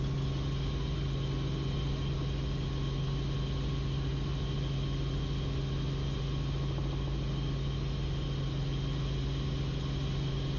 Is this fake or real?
real